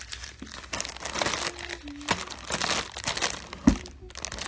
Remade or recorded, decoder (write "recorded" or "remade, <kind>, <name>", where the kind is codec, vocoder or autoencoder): recorded